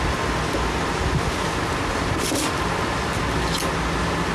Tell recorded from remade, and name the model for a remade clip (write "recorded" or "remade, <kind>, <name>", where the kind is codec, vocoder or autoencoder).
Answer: recorded